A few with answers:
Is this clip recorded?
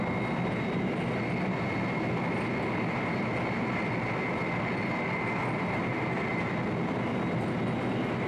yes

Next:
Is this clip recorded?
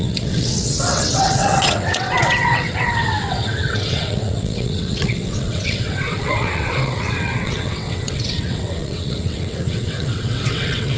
no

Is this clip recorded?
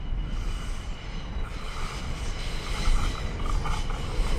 yes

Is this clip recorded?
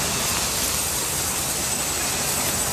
yes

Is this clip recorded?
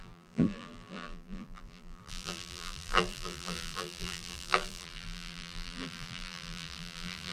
no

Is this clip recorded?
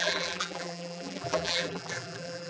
no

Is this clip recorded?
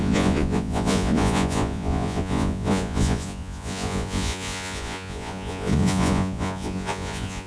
no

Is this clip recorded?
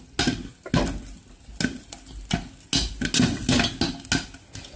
yes